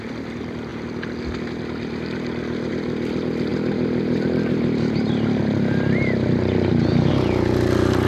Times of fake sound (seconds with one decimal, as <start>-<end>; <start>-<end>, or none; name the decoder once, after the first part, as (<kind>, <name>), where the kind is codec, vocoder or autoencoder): 3.5-7.1 (vocoder, BigVGAN v2)